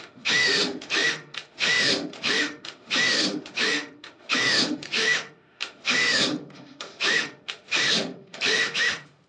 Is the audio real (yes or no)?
no